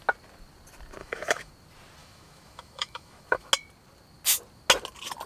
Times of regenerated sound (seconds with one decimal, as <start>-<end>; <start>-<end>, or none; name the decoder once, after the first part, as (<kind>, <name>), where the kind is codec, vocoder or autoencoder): 1.0-1.5 (autoencoder, DAC-VAE); 2.0-3.5